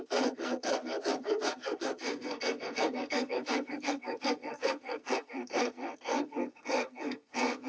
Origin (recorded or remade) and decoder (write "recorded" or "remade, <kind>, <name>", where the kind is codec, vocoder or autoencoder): remade, codec, SNAC